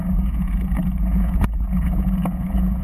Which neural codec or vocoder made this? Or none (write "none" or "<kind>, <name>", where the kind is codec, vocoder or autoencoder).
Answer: vocoder, Vocos